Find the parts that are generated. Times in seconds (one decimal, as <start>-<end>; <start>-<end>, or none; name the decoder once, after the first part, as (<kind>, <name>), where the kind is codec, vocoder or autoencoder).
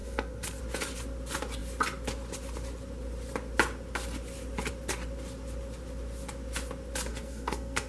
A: 0.0-0.6 (codec, SNAC); 7.1-7.9